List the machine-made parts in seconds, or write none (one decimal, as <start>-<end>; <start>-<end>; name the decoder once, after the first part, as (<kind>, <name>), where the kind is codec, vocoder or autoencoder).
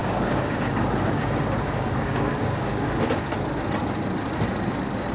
0.0-3.1 (codec, DAC)